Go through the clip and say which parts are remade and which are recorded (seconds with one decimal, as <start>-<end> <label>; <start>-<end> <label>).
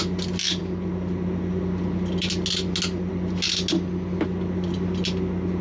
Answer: 0.0-5.6 recorded